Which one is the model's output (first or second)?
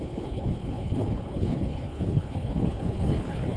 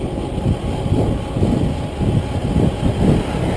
first